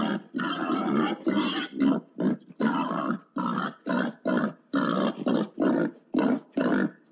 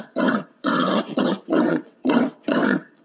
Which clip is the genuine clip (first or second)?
first